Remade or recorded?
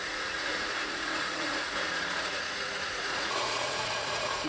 remade